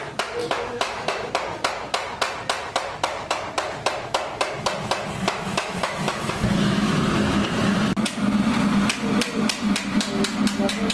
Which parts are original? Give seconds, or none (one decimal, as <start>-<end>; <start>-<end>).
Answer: 0.0-0.4; 1.3-5.5; 7.0-10.9